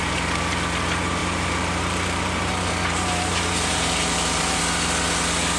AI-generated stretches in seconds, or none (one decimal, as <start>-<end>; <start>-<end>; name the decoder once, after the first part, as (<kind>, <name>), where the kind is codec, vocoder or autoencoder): 1.2-4.6 (vocoder, BigVGAN v2)